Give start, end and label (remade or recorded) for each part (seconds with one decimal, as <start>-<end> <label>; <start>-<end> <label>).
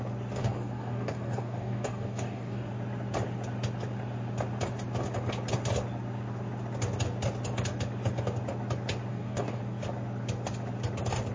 0.0-0.4 recorded; 0.4-2.7 remade; 2.7-9.1 recorded; 9.1-9.6 remade; 9.6-11.3 recorded